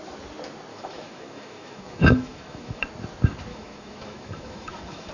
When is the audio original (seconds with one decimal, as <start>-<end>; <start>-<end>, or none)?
0.0-0.7; 2.8-3.5